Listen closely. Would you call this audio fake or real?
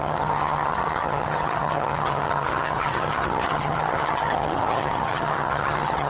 fake